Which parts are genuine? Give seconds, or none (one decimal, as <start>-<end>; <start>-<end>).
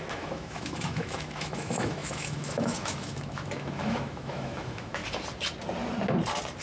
5.0-6.6